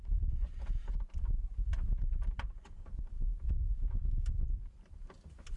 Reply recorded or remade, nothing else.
remade